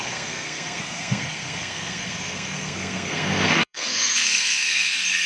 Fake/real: fake